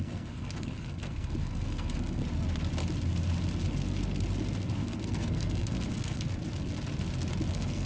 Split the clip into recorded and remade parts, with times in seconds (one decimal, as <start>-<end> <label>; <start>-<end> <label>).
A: 0.0-2.2 remade; 2.2-4.6 recorded; 4.6-6.3 remade; 6.3-7.5 recorded; 7.5-7.9 remade